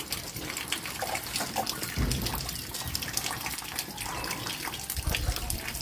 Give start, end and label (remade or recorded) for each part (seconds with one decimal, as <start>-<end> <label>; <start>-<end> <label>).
0.0-5.8 recorded